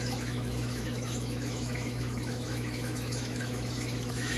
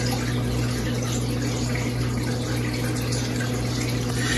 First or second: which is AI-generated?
first